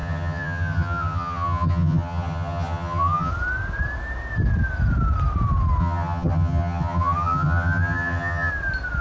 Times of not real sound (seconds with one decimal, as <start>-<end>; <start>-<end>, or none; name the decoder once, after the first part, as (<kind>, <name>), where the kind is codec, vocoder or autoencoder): 0.0-3.3 (vocoder, HiFi-GAN); 5.8-8.5